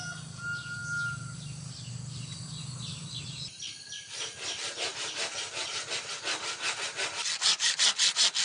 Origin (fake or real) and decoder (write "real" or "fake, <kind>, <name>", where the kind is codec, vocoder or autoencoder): real